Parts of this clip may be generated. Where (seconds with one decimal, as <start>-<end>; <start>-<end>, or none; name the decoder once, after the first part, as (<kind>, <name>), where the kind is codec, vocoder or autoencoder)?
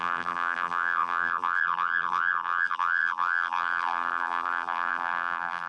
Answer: 0.0-5.7 (vocoder, BigVGAN v2)